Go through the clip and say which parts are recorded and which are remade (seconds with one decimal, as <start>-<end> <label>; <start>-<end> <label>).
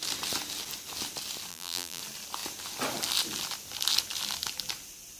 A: 0.0-1.5 recorded; 1.5-2.0 remade; 2.0-5.2 recorded